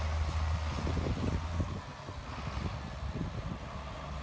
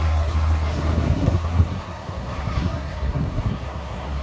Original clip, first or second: first